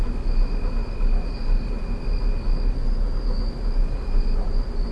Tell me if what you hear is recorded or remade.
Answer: recorded